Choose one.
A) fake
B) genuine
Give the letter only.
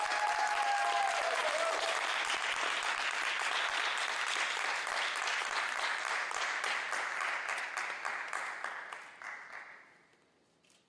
B